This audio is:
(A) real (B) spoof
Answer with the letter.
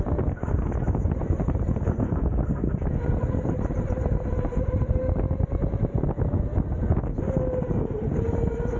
A